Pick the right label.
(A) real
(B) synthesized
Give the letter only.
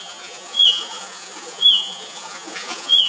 B